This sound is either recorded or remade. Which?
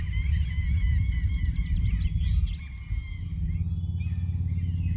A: recorded